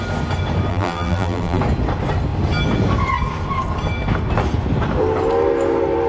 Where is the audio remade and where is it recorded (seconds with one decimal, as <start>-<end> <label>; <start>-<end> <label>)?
0.0-0.7 recorded; 0.7-1.6 remade; 1.6-6.1 recorded